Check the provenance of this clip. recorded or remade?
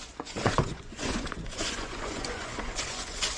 remade